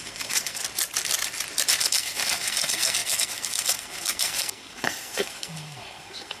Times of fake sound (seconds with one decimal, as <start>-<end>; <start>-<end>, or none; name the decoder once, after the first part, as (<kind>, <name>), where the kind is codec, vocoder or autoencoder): 0.0-0.6 (codec, SNAC); 1.8-6.4